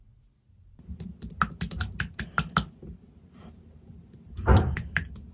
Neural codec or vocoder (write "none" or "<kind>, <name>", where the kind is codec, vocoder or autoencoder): none